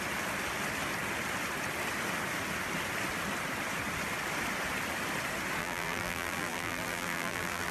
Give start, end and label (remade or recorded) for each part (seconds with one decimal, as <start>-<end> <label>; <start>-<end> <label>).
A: 0.0-5.6 recorded; 5.6-7.7 remade